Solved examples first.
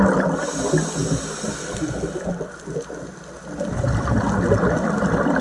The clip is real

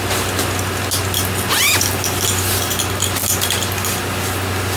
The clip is real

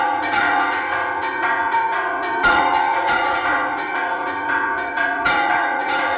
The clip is fake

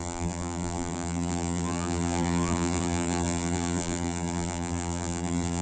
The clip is fake